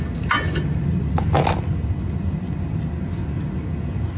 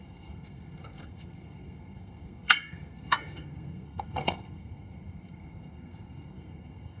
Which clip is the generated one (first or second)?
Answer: second